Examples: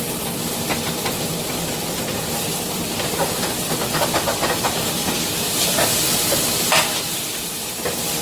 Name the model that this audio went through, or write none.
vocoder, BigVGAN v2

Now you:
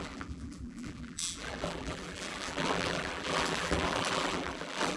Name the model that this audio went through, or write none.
vocoder, BigVGAN v2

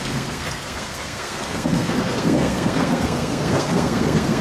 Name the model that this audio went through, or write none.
codec, SNAC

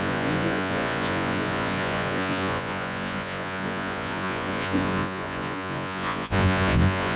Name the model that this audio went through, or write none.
vocoder, Vocos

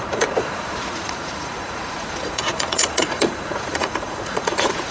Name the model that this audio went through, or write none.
vocoder, Vocos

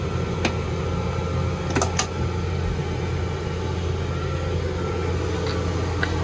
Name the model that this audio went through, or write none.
none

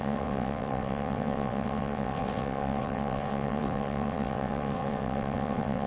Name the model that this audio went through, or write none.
vocoder, WaveNeXt